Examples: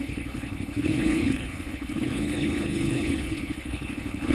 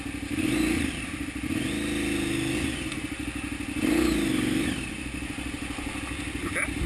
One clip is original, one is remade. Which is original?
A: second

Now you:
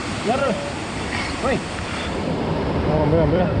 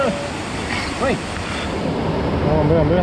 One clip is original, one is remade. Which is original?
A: second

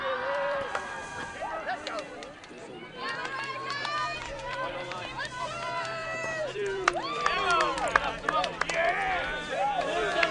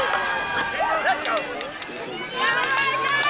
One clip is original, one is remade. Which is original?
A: second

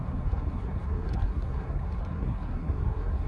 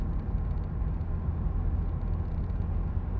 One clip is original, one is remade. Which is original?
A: second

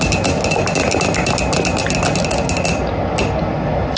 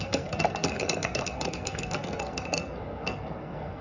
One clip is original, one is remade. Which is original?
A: first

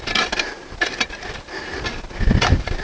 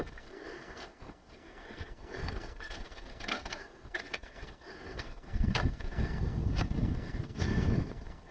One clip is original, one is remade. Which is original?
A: first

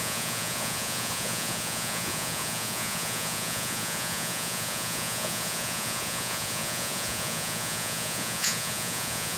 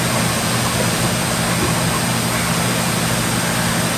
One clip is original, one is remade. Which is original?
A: second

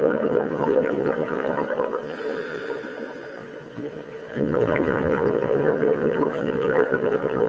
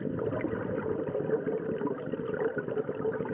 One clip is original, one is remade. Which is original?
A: second